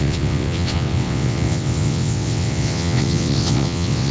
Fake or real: fake